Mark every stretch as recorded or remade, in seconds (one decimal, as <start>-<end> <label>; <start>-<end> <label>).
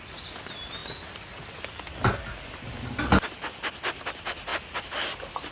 0.0-5.5 recorded